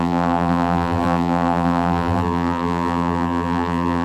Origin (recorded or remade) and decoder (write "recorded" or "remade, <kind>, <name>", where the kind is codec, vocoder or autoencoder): remade, vocoder, BigVGAN v2